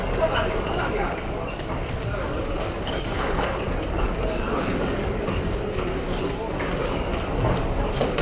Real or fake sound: fake